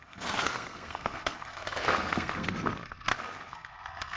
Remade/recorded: remade